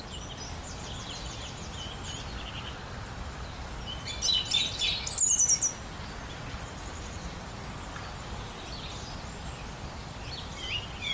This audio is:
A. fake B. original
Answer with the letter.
B